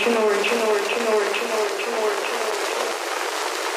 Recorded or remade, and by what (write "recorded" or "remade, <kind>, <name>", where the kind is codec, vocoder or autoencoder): recorded